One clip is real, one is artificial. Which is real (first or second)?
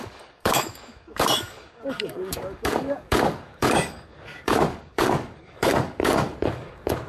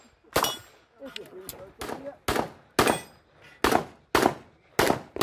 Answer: second